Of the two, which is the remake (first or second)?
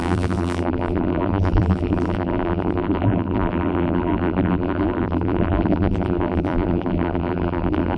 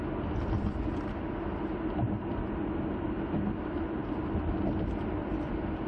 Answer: first